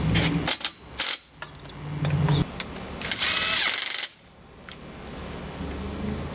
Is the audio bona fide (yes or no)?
yes